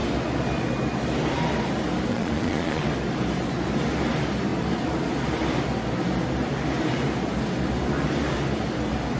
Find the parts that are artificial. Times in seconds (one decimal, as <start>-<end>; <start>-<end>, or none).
2.1-2.8